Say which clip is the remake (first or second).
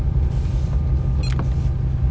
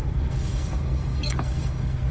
second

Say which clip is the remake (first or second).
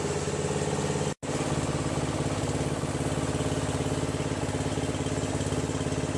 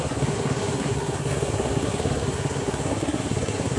second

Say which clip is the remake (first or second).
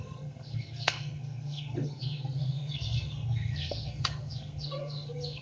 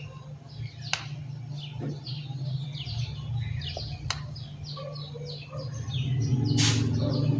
first